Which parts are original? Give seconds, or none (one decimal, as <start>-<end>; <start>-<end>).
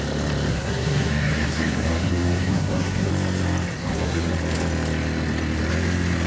0.0-0.5; 3.1-3.8; 4.3-6.3